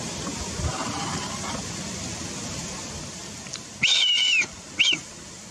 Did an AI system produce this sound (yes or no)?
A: no